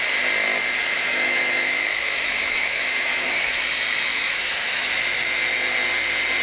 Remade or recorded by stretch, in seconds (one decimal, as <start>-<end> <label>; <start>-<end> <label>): 0.0-0.8 recorded; 0.8-3.6 remade; 3.6-4.1 recorded; 4.1-4.9 remade; 4.9-6.4 recorded